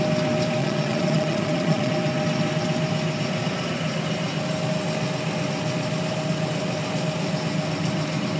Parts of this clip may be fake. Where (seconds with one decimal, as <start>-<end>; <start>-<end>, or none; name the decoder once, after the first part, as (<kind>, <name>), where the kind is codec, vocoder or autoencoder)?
0.6-1.9 (vocoder, Vocos)